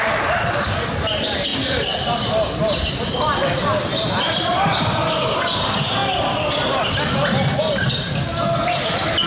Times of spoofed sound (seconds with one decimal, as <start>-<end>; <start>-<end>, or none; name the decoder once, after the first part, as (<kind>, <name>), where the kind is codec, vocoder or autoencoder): none